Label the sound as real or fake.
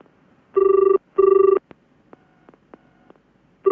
real